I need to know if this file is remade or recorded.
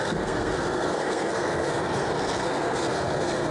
remade